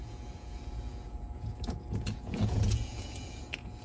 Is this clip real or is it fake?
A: fake